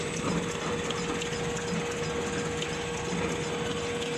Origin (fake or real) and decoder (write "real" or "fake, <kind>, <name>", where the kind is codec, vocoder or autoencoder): real